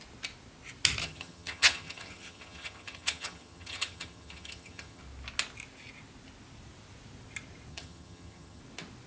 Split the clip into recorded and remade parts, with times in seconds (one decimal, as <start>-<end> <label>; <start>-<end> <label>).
0.0-1.0 recorded; 1.0-5.0 remade; 5.0-7.7 recorded; 7.7-8.6 remade; 8.6-9.1 recorded